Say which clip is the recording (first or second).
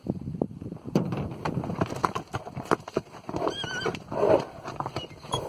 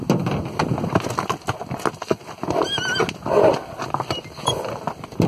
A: second